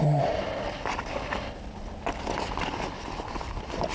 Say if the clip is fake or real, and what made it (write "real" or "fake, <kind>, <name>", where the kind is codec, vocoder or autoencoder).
real